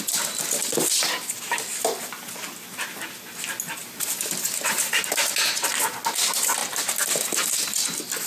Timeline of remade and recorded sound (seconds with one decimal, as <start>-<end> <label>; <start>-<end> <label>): 0.0-3.8 recorded; 3.8-5.0 remade; 5.0-8.3 recorded